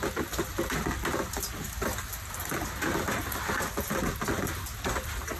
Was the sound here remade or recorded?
recorded